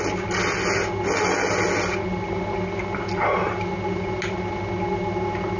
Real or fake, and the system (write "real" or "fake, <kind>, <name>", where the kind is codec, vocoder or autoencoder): real